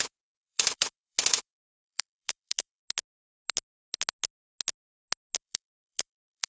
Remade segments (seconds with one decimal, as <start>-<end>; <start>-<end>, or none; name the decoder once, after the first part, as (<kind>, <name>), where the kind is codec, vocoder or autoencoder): 0.0-2.8 (autoencoder, DAC-VAE); 5.4-6.5